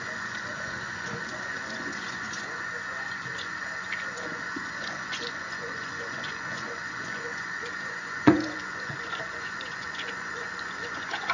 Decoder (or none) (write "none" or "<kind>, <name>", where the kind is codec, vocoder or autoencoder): vocoder, Vocos